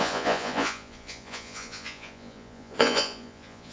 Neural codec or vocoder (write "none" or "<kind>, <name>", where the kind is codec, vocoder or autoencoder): vocoder, Vocos